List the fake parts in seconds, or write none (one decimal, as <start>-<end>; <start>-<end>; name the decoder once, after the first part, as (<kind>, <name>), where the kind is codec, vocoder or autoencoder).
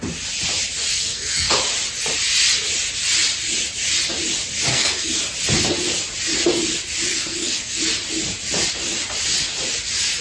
0.9-1.5 (codec, SNAC); 4.7-5.2; 7.1-7.8